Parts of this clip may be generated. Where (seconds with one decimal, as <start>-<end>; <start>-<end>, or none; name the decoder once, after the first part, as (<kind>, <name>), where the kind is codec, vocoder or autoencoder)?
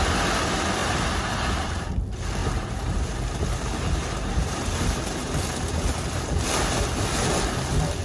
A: 0.8-1.9 (vocoder, BigVGAN v2); 2.4-6.6